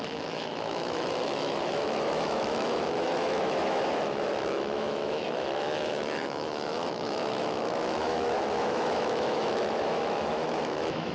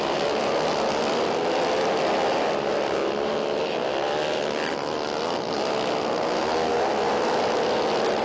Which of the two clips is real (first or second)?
second